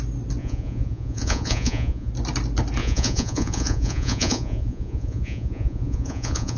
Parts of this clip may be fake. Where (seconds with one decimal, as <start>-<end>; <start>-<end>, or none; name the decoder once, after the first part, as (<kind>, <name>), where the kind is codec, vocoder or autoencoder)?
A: 0.4-2.1 (vocoder, Vocos); 2.8-6.6